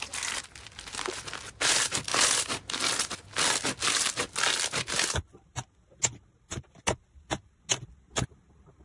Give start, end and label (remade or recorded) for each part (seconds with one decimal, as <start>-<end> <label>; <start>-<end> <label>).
0.0-8.8 recorded